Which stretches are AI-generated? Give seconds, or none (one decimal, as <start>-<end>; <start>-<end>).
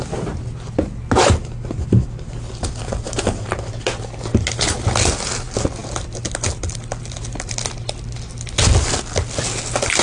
none